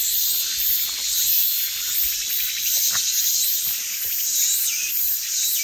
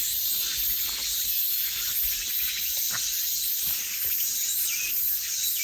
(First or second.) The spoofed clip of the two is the second